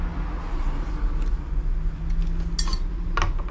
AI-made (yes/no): no